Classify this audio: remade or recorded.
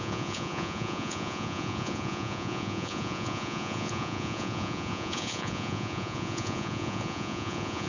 remade